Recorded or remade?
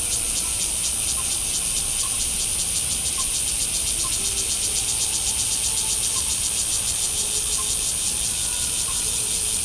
recorded